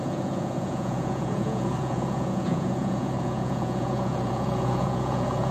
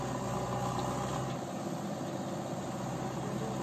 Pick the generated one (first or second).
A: first